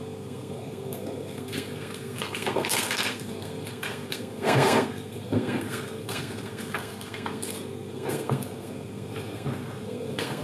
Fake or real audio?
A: fake